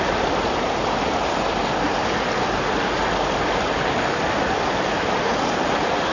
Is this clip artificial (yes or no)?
no